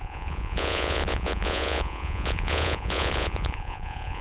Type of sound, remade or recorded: remade